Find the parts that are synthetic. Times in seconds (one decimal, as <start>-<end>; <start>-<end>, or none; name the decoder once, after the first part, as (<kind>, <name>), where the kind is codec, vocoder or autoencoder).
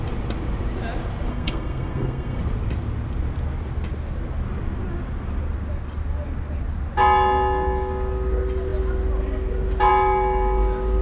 1.3-2.4 (codec, SNAC)